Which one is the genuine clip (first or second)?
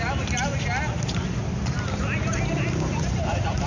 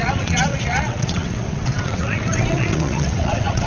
first